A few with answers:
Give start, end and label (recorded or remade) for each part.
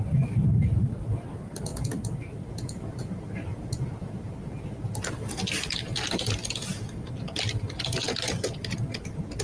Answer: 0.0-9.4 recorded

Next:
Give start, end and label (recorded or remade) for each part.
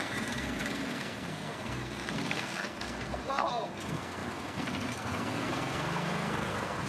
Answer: 0.0-6.9 remade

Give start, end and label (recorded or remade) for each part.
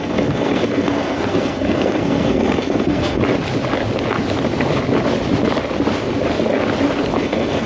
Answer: 0.0-3.2 remade; 3.2-7.2 recorded; 7.2-7.7 remade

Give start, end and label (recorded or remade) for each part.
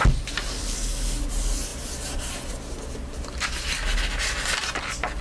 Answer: 0.0-0.6 recorded; 0.6-1.2 remade; 1.2-5.2 recorded